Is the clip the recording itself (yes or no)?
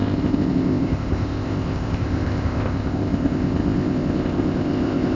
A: no